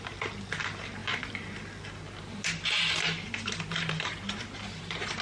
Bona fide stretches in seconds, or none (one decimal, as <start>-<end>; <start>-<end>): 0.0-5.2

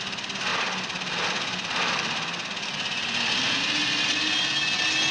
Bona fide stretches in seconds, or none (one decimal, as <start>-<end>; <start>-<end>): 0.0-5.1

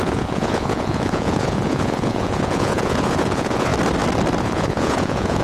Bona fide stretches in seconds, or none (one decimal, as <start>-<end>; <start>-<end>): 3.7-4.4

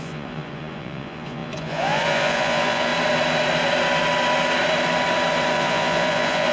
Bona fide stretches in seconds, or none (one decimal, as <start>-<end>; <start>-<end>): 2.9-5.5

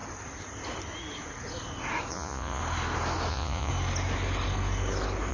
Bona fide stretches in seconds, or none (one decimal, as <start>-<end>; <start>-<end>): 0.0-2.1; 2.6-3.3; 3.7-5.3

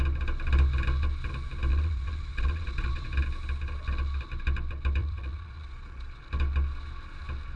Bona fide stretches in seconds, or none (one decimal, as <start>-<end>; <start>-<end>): 0.0-1.7; 3.1-5.0; 6.2-7.6